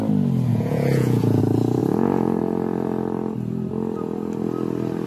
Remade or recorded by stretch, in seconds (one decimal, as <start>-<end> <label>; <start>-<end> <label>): 0.0-0.5 recorded; 0.5-1.4 remade; 1.4-1.8 recorded; 1.8-2.4 remade; 2.4-5.1 recorded